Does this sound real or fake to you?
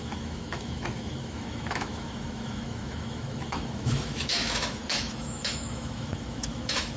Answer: fake